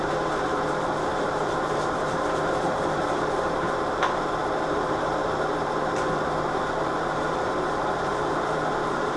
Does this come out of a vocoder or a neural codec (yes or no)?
yes